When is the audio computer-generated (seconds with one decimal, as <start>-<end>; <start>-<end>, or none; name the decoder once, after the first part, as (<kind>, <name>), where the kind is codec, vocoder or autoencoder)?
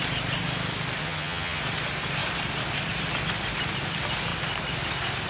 1.0-1.6 (vocoder, HiFi-GAN)